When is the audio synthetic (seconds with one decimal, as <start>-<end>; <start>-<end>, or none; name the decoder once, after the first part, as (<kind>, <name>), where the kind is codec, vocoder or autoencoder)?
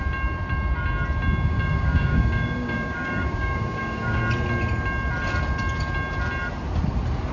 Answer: 1.5-4.2 (codec, DAC)